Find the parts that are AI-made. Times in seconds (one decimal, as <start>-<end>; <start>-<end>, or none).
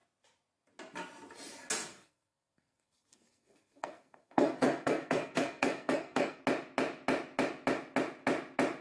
1.9-6.4